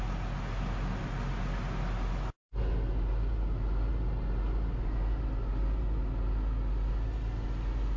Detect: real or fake real